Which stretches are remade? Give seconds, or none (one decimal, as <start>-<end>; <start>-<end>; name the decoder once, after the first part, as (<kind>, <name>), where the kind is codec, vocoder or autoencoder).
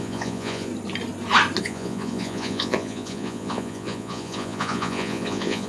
0.0-0.7 (vocoder, Vocos); 1.6-5.7